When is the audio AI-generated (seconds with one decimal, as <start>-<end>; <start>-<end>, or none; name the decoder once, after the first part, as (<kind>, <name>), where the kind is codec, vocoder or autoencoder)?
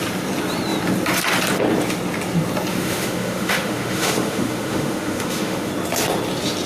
2.7-5.7 (autoencoder, DAC-VAE)